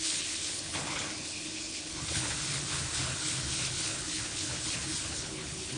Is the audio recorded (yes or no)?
no